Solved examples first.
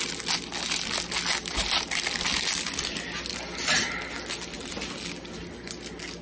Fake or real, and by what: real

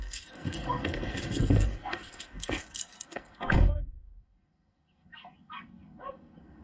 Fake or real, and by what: fake, codec, SNAC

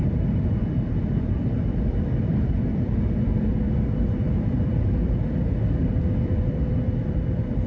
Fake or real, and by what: fake, vocoder, BigVGAN v2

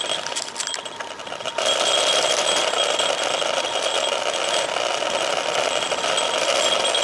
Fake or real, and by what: real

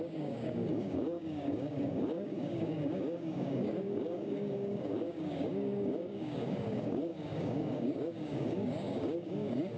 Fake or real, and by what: fake, codec, DAC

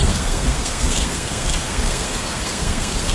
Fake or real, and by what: fake, codec, SNAC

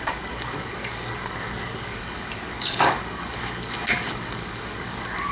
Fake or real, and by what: fake, codec, DAC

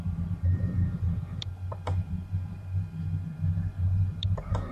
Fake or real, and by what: fake, vocoder, BigVGAN v2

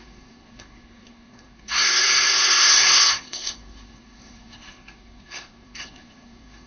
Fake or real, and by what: fake, codec, SNAC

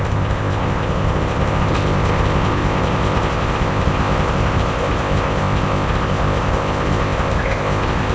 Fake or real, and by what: fake, codec, ZipCodec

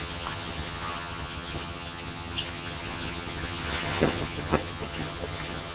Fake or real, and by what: fake, vocoder, HiFi-GAN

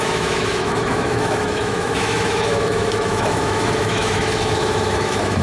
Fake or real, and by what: fake, autoencoder, DAC-VAE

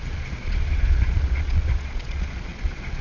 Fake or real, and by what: fake, vocoder, Vocos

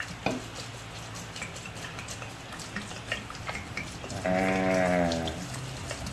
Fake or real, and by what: real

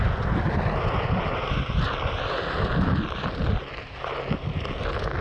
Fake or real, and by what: real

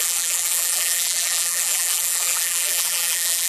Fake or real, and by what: fake, vocoder, BigVGAN v2